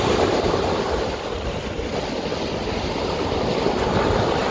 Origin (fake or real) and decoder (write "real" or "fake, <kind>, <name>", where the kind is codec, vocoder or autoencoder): real